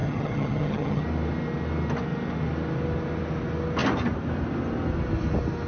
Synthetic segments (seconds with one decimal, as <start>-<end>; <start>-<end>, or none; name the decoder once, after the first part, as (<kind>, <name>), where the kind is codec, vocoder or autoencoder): 0.0-1.0 (vocoder, HiFi-GAN)

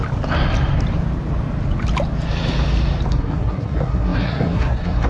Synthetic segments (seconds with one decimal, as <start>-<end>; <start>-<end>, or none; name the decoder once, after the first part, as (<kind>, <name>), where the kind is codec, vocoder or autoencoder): 3.1-5.1 (codec, SNAC)

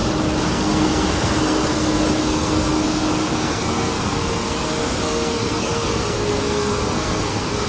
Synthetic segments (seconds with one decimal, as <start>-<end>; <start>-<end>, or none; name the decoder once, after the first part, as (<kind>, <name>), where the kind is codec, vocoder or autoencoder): 0.5-7.7 (codec, SNAC)

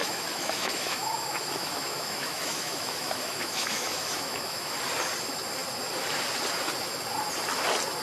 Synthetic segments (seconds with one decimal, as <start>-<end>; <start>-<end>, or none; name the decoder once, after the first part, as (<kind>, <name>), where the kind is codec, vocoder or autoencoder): 0.0-4.7 (autoencoder, DAC-VAE)

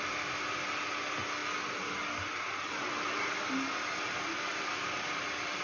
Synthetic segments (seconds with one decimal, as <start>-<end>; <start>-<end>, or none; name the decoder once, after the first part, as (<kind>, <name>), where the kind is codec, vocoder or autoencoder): none

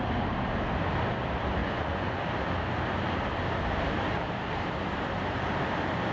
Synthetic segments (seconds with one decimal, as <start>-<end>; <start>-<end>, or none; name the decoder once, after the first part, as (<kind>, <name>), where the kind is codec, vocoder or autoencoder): 1.6-2.2 (vocoder, Vocos)